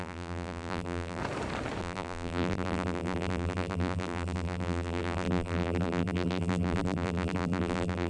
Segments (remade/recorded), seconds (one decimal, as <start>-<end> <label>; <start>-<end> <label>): 0.0-1.2 remade; 1.2-1.8 recorded; 1.8-8.1 remade